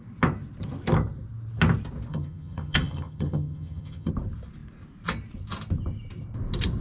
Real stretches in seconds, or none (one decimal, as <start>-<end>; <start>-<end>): 0.0-2.1; 4.1-6.8